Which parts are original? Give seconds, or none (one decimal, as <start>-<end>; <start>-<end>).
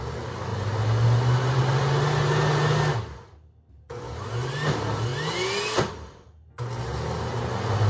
0.0-7.9